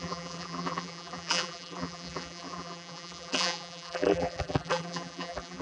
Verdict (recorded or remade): remade